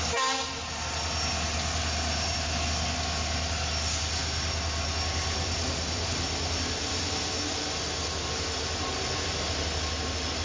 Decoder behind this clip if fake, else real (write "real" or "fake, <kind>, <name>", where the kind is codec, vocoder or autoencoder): real